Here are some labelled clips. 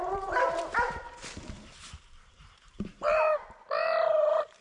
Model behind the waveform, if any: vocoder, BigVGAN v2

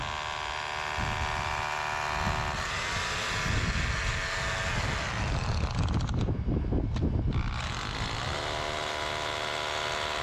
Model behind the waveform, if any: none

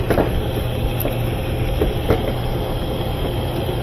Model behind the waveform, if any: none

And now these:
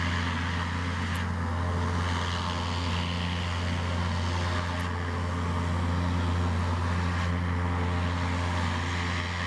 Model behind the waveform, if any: none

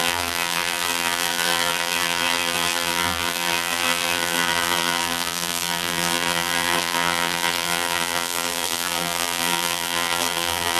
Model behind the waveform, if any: vocoder, BigVGAN v2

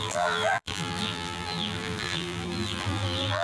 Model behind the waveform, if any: vocoder, BigVGAN v2